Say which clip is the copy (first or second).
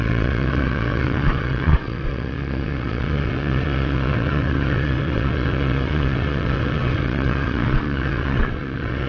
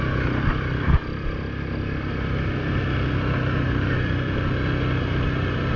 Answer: first